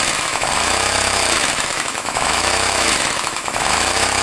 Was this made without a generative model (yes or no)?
no